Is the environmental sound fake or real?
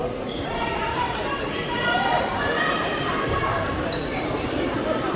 fake